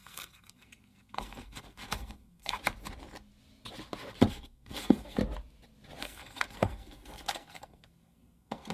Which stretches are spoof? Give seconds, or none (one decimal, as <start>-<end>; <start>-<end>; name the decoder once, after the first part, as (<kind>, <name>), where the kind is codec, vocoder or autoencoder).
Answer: 0.0-2.6 (codec, SNAC); 4.3-5.2; 6.0-8.7